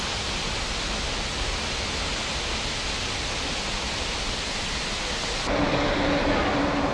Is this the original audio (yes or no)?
yes